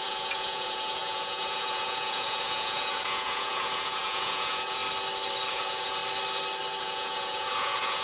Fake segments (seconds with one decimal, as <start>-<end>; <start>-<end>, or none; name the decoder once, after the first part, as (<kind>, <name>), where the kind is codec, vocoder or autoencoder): 0.0-4.8 (vocoder, Vocos); 5.5-6.0; 6.8-8.0